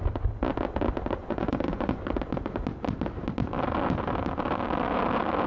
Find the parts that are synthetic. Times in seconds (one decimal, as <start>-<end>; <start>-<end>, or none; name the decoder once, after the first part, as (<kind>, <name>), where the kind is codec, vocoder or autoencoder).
1.2-2.0 (vocoder, Vocos)